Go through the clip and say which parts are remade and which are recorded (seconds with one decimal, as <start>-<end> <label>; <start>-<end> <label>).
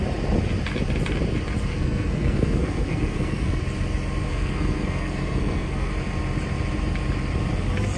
0.0-1.7 recorded; 1.7-3.6 remade; 3.6-4.3 recorded; 4.3-5.9 remade; 5.9-8.0 recorded